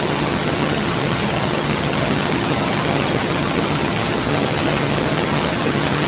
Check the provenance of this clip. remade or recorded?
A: remade